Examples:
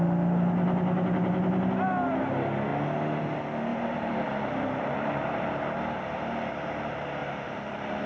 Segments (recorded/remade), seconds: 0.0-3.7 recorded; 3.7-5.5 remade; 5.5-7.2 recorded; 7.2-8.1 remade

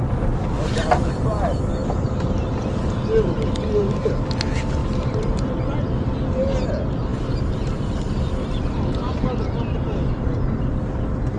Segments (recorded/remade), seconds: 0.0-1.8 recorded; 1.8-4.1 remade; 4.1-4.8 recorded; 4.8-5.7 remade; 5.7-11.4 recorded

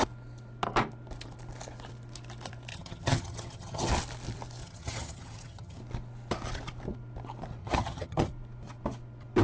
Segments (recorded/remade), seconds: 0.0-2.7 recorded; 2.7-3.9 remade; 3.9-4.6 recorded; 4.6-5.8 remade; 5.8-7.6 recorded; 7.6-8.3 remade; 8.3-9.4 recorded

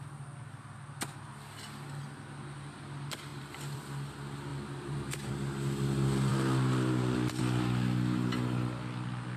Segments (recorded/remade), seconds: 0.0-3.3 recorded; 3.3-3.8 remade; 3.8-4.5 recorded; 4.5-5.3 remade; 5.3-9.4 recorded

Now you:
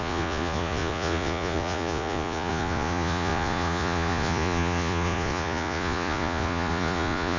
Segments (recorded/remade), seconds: 0.0-7.4 remade